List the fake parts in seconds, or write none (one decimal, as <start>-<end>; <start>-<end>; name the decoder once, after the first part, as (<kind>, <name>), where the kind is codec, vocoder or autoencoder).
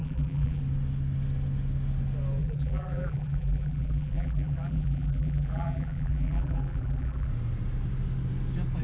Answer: 0.0-0.6 (vocoder, BigVGAN v2); 2.4-7.3